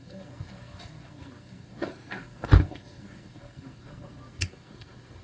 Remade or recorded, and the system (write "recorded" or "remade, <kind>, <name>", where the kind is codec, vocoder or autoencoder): remade, codec, SNAC